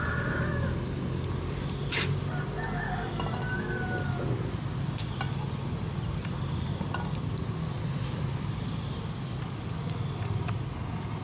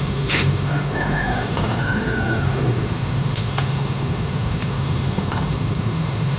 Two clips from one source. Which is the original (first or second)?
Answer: first